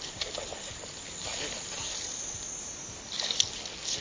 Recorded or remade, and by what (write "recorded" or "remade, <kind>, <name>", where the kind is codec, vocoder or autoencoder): recorded